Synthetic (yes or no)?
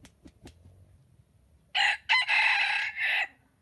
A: no